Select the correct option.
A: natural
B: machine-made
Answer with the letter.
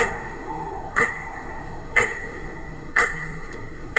B